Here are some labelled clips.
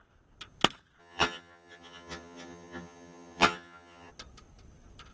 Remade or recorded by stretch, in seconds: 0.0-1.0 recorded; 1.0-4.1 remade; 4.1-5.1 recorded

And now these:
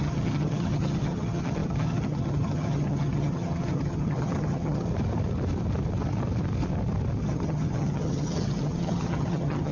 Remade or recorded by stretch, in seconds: 0.0-4.9 remade; 4.9-7.2 recorded; 7.2-9.7 remade

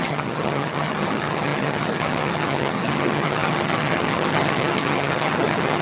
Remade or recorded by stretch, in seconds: 0.0-5.8 remade